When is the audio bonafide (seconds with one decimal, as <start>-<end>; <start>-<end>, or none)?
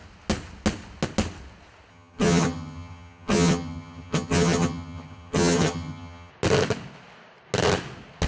0.0-1.9; 6.3-8.3